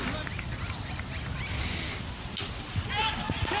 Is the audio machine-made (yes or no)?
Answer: no